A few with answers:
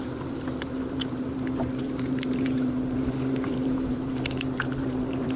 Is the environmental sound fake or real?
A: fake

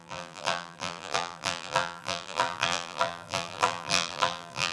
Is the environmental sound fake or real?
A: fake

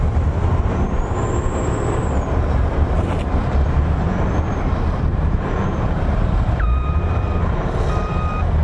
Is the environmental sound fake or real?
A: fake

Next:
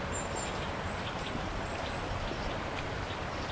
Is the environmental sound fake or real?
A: real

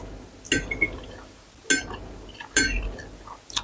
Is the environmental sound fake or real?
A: real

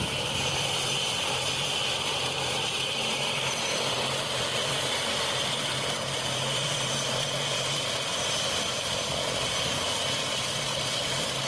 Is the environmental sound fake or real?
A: fake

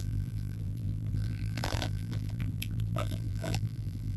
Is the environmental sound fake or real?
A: fake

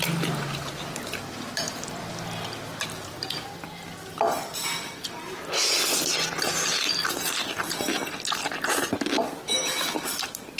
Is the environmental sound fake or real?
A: real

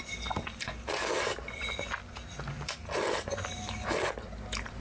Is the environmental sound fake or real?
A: real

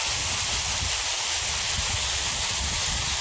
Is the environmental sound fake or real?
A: fake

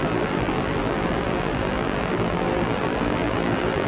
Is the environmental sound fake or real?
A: fake